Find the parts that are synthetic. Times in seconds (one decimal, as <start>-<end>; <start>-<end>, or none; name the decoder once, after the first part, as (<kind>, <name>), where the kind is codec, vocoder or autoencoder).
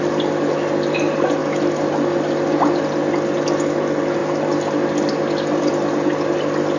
none